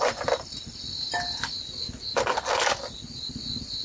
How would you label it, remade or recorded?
recorded